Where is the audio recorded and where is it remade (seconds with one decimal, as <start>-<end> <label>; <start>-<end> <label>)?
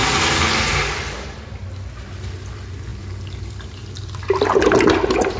0.0-5.4 recorded